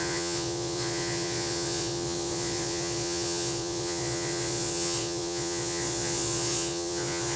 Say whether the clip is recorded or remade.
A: remade